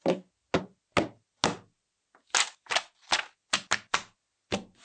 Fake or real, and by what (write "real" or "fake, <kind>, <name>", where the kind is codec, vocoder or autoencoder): real